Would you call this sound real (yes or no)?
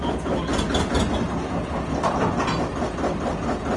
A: yes